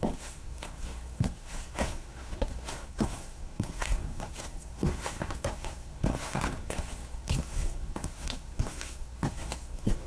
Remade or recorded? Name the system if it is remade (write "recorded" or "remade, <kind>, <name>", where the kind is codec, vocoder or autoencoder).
remade, codec, SNAC